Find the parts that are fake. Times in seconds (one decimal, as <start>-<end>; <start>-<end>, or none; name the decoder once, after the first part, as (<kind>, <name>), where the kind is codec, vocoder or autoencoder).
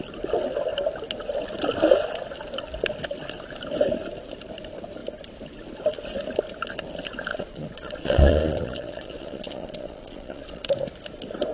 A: 7.3-10.7 (vocoder, Vocos)